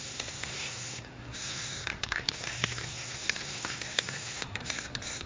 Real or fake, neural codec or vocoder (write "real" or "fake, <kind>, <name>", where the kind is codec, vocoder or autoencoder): fake, codec, SNAC